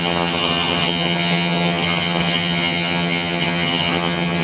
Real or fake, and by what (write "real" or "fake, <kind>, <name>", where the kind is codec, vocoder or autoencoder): fake, vocoder, HiFi-GAN